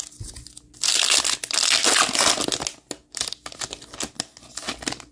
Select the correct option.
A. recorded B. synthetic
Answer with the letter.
A